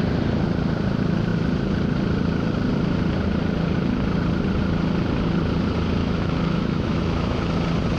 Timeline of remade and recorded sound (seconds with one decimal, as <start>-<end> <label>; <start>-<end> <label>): 0.0-6.0 recorded; 6.0-7.4 remade; 7.4-8.0 recorded

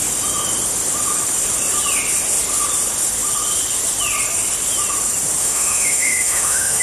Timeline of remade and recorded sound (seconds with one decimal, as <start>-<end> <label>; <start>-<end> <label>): 0.0-5.4 recorded; 5.4-6.8 remade

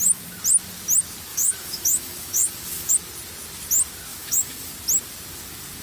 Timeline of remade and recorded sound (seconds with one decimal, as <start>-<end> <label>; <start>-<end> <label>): 0.0-1.3 recorded; 1.3-2.9 remade; 2.9-4.1 recorded; 4.1-4.7 remade; 4.7-5.8 recorded

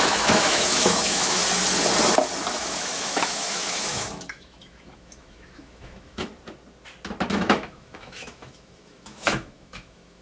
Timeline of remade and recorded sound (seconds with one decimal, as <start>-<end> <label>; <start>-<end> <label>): 0.0-1.4 remade; 1.4-2.5 recorded; 2.5-6.3 remade; 6.3-7.3 recorded; 7.3-10.2 remade

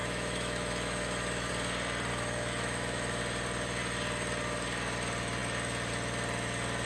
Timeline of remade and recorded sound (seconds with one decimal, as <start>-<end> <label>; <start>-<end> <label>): 0.0-1.5 remade; 1.5-2.1 recorded; 2.1-3.2 remade; 3.2-6.9 recorded